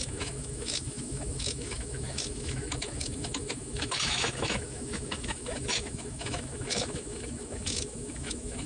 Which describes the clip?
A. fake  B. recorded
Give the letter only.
A